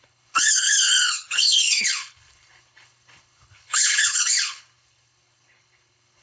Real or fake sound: fake